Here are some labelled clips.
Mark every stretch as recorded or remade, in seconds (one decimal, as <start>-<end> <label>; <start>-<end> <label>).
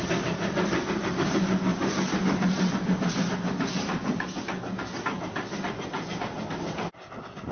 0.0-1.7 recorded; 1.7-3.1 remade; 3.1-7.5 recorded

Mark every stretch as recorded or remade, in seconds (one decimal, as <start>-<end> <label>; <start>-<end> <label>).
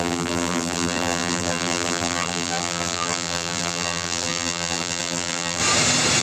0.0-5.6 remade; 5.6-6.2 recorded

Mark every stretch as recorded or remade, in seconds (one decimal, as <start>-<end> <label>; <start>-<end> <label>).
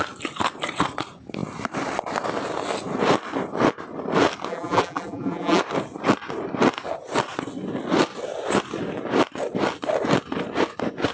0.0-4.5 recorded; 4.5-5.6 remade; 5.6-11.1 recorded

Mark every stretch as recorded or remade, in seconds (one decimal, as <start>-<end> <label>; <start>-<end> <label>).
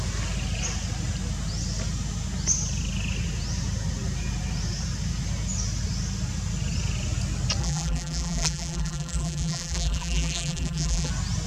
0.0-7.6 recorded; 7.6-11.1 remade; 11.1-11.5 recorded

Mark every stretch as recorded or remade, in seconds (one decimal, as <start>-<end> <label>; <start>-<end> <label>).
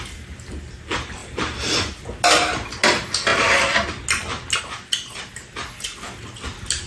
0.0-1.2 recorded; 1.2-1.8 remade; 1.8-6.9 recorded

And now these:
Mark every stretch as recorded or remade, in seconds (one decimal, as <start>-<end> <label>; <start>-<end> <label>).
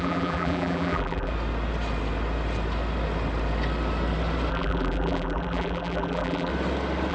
0.0-1.3 remade; 1.3-4.5 recorded; 4.5-6.5 remade; 6.5-7.1 recorded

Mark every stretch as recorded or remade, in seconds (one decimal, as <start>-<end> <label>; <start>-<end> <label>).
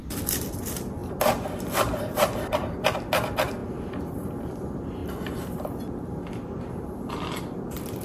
0.0-1.0 remade; 1.0-2.0 recorded; 2.0-3.6 remade; 3.6-4.1 recorded; 4.1-5.0 remade; 5.0-6.9 recorded; 6.9-8.0 remade